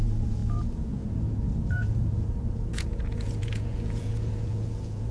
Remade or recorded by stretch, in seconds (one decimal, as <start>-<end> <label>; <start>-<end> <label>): 0.0-5.1 remade